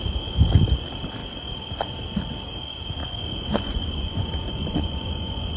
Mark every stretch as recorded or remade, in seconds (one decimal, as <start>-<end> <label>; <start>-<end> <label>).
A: 0.0-3.0 recorded; 3.0-5.6 remade